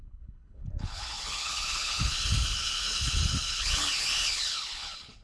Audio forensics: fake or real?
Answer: fake